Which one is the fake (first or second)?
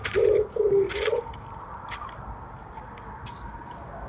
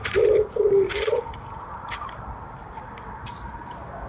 second